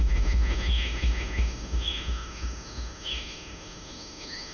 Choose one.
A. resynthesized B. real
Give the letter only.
A